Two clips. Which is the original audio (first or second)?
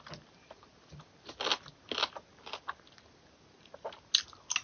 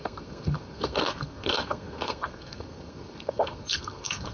first